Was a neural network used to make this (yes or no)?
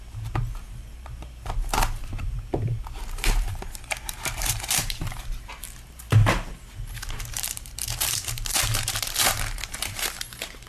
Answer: yes